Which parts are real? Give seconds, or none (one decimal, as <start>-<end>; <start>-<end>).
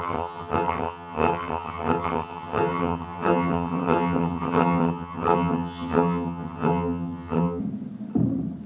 7.6-8.7